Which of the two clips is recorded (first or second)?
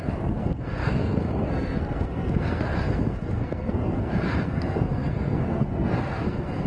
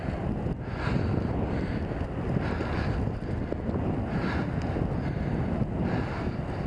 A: second